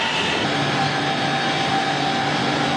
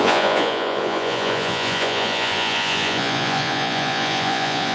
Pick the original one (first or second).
first